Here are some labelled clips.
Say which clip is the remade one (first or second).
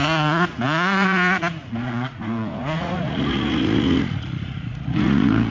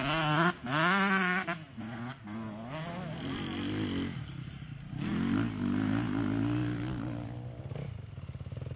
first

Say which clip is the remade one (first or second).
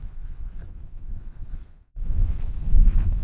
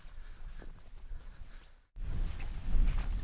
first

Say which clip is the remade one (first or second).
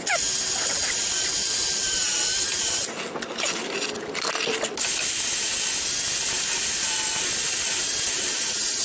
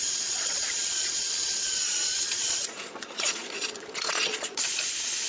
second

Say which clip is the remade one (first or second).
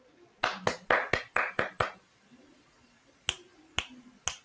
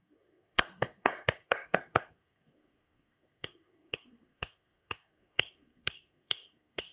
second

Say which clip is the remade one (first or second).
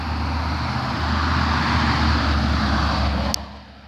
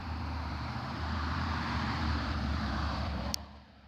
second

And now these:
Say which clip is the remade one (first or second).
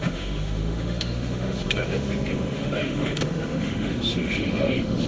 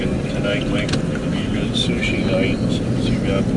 first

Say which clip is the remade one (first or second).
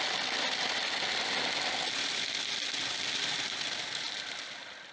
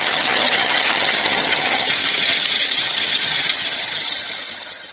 second